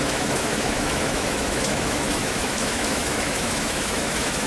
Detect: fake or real fake